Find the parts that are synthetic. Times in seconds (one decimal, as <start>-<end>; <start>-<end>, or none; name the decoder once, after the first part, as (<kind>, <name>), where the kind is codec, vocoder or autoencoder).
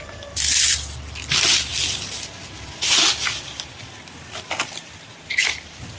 none